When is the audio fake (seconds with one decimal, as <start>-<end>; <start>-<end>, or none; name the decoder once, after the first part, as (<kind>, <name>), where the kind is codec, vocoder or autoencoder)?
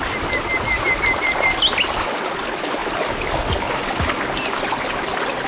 none